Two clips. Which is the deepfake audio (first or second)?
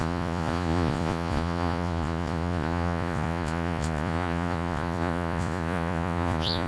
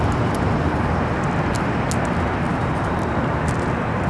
first